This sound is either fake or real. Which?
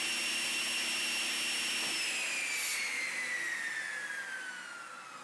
real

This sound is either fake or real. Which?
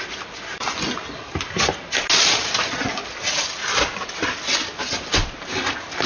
real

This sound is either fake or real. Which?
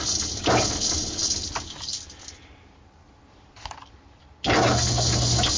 real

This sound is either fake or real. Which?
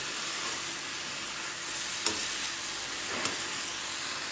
real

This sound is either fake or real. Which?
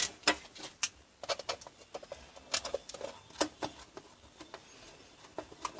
real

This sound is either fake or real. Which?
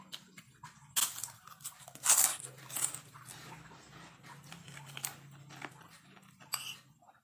real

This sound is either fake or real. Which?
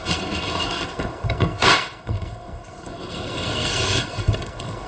fake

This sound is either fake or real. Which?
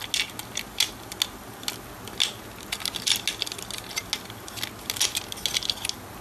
real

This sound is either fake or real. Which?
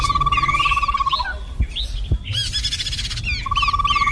real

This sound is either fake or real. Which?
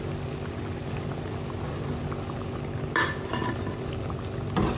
real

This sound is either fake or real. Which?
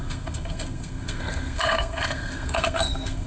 fake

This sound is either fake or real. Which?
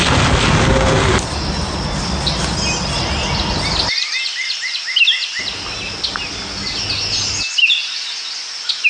real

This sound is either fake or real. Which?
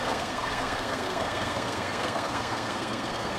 fake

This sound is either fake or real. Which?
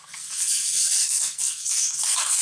fake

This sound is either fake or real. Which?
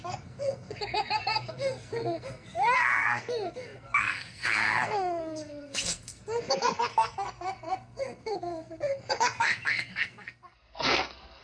fake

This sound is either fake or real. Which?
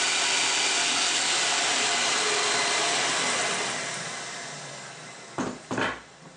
real